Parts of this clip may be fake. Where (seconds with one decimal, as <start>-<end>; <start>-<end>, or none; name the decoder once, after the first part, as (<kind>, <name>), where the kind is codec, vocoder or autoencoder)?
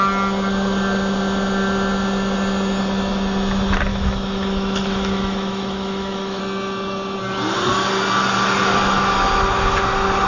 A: 3.9-6.4 (autoencoder, DAC-VAE)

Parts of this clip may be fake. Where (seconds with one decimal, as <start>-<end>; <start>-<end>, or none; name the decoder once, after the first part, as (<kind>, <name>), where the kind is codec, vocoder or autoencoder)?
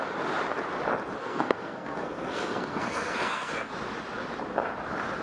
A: 1.2-3.7 (codec, SNAC)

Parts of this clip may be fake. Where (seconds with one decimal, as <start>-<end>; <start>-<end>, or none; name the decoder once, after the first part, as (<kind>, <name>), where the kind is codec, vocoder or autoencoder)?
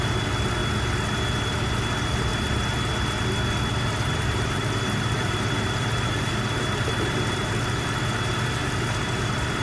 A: 0.0-0.6 (vocoder, BigVGAN v2); 1.5-2.3; 3.7-9.6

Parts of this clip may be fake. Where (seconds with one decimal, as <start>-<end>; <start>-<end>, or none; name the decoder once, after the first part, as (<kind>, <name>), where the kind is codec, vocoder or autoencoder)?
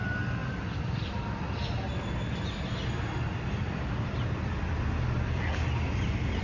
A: 3.3-5.7 (vocoder, BigVGAN v2)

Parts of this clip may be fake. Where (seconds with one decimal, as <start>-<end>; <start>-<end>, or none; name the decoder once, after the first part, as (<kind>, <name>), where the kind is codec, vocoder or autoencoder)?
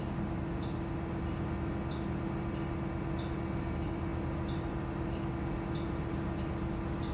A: none